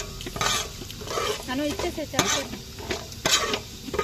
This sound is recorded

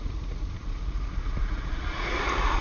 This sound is remade